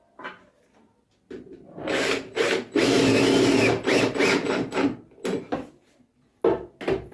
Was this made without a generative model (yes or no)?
yes